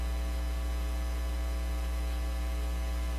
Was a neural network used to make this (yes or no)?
no